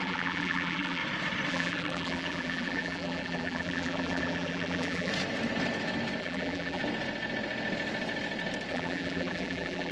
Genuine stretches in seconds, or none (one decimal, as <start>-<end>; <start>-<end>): 1.0-1.5; 5.1-6.2; 6.8-8.7